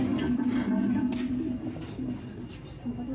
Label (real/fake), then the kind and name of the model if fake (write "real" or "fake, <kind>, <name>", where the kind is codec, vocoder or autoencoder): real